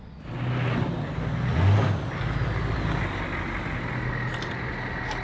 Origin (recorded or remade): recorded